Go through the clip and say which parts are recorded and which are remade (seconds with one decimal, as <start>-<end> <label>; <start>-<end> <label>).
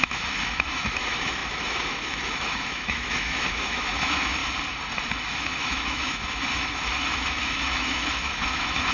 0.0-4.4 remade; 4.4-5.3 recorded; 5.3-8.9 remade